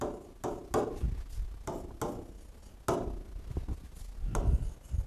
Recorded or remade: recorded